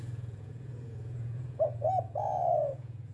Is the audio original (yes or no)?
no